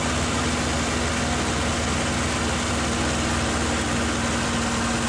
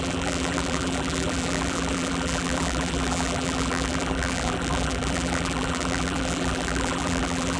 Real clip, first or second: first